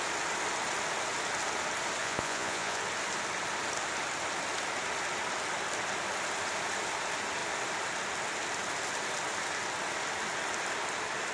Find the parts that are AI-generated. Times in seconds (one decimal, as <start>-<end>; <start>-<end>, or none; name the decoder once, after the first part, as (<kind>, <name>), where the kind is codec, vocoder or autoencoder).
2.0-2.8 (vocoder, Vocos)